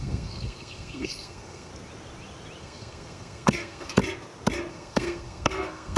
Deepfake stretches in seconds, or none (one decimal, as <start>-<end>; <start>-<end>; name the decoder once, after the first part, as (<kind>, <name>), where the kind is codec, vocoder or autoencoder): 0.0-1.7 (codec, SNAC); 2.6-4.0; 4.7-6.0